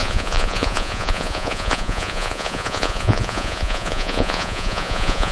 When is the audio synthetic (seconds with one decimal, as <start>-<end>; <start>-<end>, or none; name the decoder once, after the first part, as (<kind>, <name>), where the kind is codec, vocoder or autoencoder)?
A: 0.0-5.3 (vocoder, Vocos)